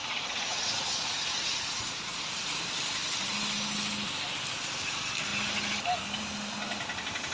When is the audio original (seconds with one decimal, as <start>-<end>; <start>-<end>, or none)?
2.6-7.3